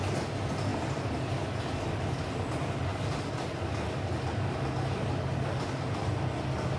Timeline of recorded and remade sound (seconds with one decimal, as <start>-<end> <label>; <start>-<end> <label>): 0.0-6.8 recorded

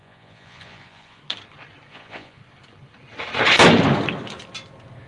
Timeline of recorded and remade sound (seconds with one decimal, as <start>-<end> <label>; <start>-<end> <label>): 0.0-1.2 remade; 1.2-1.9 recorded; 1.9-2.4 remade; 2.4-5.1 recorded